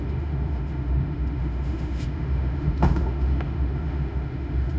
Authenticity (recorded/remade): remade